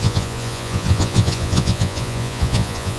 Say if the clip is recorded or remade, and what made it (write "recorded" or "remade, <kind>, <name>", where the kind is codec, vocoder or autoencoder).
remade, vocoder, Vocos